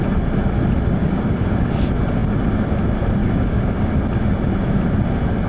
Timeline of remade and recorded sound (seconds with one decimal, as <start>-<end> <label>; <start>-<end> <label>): 0.0-1.0 recorded; 1.0-1.7 remade; 1.7-3.2 recorded; 3.2-3.9 remade; 3.9-5.5 recorded